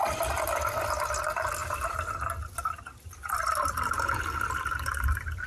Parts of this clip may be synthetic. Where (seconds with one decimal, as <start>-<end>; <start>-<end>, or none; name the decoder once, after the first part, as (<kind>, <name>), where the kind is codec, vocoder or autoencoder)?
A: none